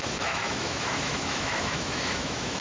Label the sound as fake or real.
fake